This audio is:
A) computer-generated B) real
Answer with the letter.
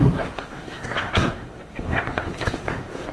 A